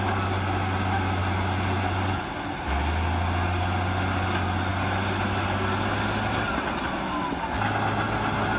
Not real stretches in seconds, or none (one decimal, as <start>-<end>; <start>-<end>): none